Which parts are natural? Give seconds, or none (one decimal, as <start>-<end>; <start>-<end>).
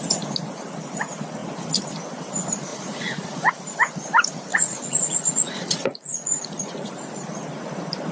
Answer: 0.0-2.7; 3.5-4.5; 6.9-8.1